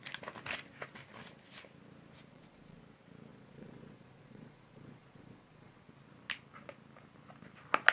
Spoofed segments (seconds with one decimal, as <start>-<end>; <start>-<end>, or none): 2.3-2.8; 3.3-5.8